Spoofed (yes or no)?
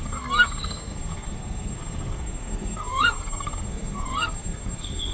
yes